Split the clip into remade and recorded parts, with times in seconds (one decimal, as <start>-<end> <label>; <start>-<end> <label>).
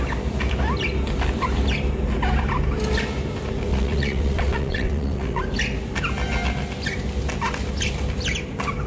0.0-3.7 recorded; 3.7-5.4 remade; 5.4-8.9 recorded